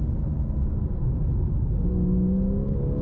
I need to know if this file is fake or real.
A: real